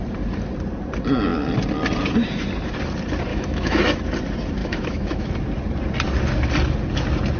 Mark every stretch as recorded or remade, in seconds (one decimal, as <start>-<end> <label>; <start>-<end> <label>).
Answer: 0.0-3.3 recorded; 3.3-3.8 remade; 3.8-4.6 recorded; 4.6-5.3 remade; 5.3-7.4 recorded

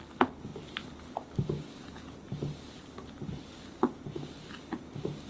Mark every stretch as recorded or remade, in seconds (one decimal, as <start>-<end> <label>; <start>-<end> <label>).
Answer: 0.0-5.3 recorded

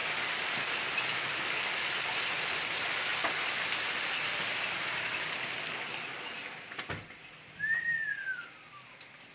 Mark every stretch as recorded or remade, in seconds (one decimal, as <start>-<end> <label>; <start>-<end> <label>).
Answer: 0.0-9.3 recorded

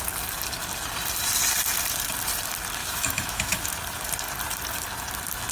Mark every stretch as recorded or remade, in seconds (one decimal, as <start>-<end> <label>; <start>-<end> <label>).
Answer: 0.0-2.8 recorded; 2.8-3.7 remade; 3.7-5.5 recorded

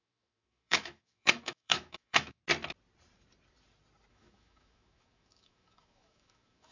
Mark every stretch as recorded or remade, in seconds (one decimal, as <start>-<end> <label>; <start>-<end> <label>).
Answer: 0.0-2.4 remade; 2.4-4.1 recorded; 4.1-6.7 remade

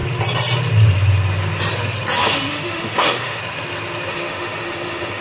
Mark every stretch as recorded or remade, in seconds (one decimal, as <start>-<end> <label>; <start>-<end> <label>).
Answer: 0.0-2.2 recorded; 2.2-3.4 remade; 3.4-4.1 recorded; 4.1-5.2 remade

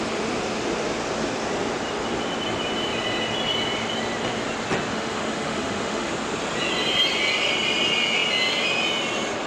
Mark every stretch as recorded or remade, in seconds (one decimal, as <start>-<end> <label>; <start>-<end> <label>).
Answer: 0.0-4.9 recorded; 4.9-6.1 remade; 6.1-9.5 recorded

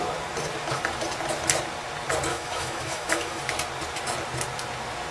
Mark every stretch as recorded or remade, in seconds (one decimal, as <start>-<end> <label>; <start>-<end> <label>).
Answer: 0.0-2.3 recorded; 2.3-3.4 remade; 3.4-5.1 recorded